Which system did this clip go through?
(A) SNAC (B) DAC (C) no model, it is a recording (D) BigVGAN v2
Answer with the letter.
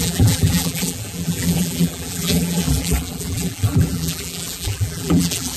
D